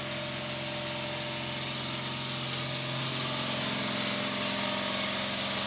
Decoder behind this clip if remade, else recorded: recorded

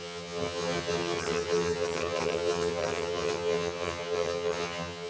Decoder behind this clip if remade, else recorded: remade, vocoder, HiFi-GAN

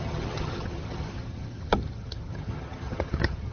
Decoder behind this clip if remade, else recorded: remade, vocoder, HiFi-GAN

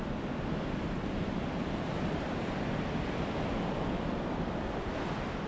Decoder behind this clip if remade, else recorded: recorded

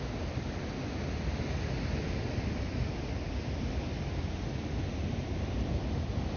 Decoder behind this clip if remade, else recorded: recorded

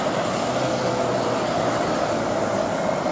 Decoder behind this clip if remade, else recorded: recorded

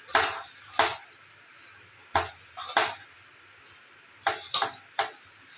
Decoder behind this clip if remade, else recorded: recorded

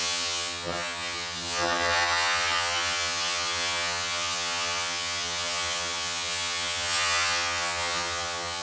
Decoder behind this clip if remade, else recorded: remade, vocoder, HiFi-GAN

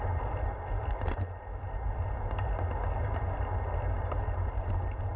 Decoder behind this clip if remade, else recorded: recorded